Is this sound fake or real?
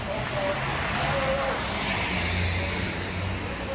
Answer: real